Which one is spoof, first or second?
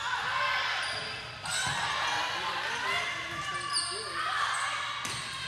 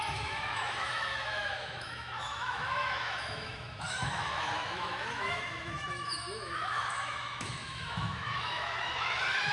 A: second